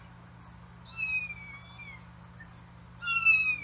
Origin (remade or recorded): recorded